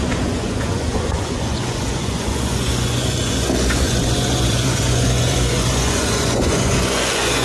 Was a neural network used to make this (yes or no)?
yes